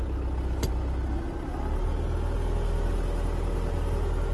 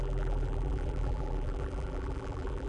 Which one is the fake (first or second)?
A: second